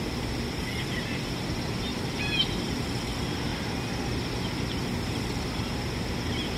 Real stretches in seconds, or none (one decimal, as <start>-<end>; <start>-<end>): 0.0-6.6